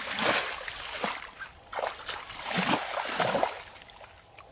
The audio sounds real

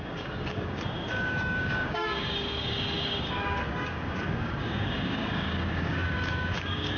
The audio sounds fake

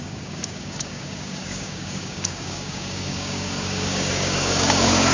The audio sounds fake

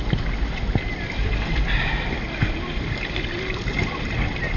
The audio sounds real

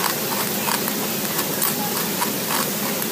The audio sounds real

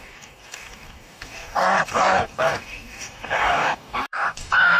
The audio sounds fake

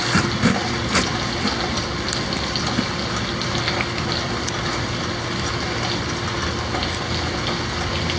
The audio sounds real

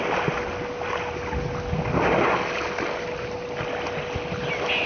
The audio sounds real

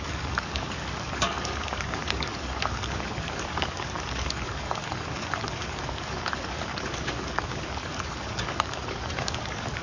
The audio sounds fake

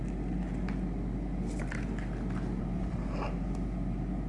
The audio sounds real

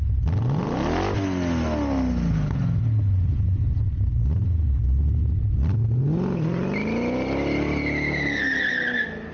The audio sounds real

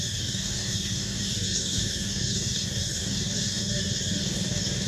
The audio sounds fake